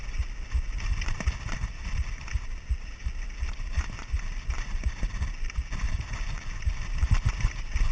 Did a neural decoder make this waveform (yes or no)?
no